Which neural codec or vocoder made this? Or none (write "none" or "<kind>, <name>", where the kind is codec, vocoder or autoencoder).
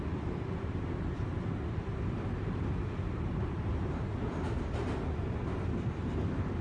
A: none